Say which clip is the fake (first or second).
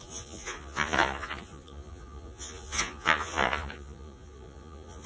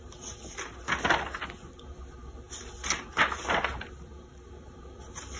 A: first